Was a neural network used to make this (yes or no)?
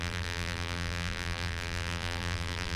yes